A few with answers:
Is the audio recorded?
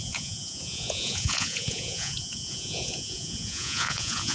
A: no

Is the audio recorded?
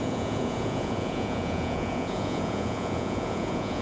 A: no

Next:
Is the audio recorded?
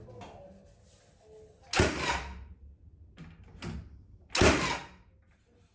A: yes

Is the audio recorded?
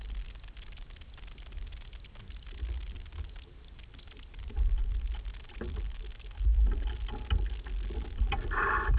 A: yes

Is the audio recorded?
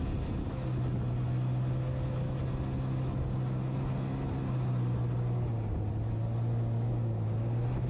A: yes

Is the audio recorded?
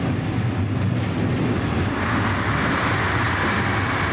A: yes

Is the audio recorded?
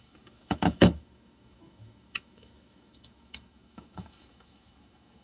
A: no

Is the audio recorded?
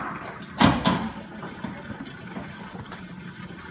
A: yes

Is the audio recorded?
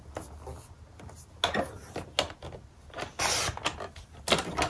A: yes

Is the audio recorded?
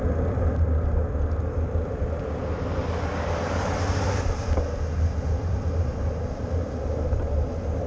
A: yes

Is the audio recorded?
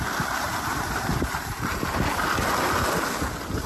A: yes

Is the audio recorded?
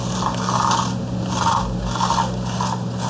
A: yes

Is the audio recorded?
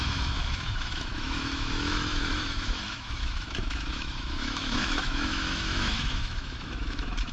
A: no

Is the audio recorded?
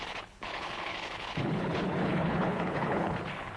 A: no